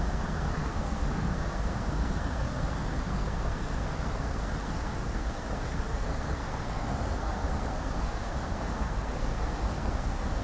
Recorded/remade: remade